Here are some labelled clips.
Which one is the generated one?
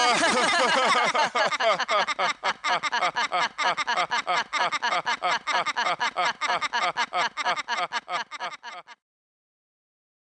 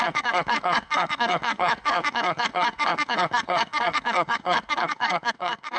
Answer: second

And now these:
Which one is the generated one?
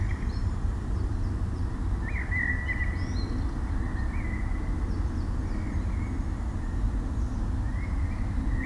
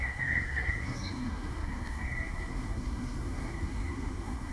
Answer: second